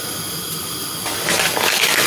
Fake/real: real